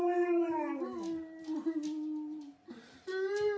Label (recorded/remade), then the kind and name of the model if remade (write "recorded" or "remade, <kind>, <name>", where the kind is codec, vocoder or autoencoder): recorded